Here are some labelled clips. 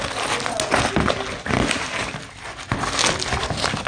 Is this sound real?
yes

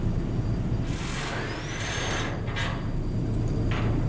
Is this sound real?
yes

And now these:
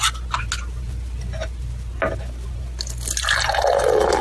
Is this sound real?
yes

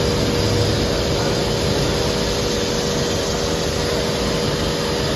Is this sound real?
yes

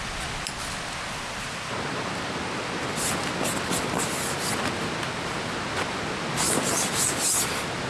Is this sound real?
yes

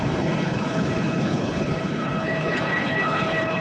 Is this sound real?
no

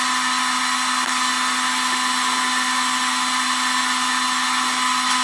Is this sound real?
yes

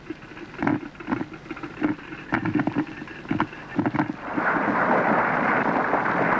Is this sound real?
yes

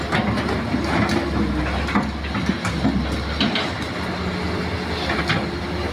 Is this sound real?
yes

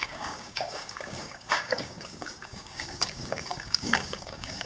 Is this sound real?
no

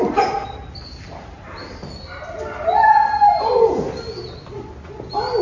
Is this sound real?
yes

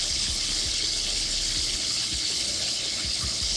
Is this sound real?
no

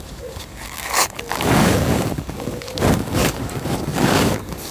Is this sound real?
no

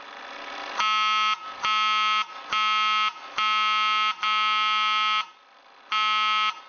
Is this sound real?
yes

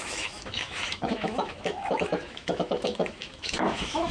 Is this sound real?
no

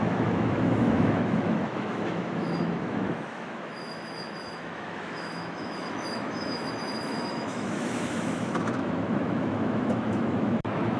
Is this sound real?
no